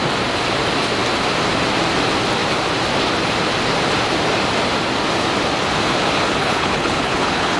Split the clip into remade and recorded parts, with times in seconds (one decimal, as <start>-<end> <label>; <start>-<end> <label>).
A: 0.0-6.4 recorded; 6.4-7.6 remade